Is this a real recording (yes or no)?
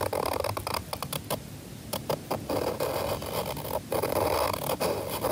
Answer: yes